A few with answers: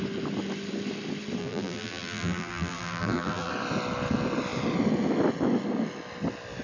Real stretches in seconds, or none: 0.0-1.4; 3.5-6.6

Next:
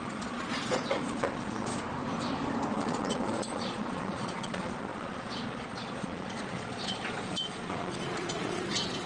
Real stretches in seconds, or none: 1.7-2.7